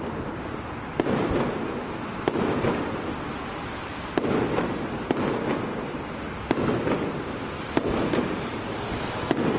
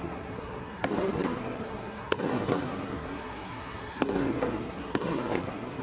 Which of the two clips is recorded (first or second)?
first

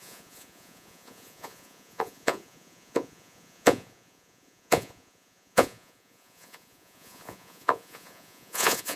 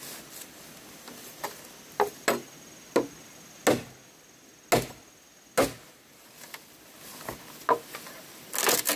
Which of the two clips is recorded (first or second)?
second